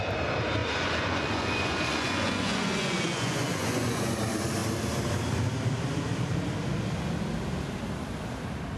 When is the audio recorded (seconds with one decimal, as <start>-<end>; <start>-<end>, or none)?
0.0-0.6; 4.1-8.8